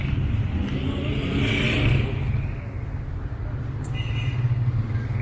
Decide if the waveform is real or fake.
real